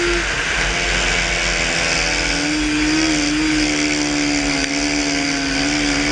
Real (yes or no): yes